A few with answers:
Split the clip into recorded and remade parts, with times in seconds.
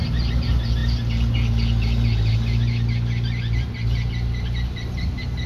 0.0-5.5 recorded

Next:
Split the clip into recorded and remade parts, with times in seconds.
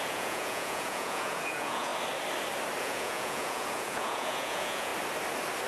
0.0-1.9 remade; 1.9-2.8 recorded; 2.8-4.9 remade; 4.9-5.7 recorded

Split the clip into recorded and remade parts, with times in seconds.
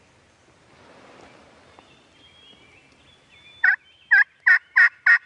0.0-5.3 recorded